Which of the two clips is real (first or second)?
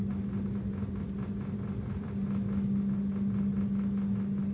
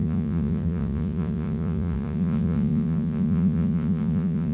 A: first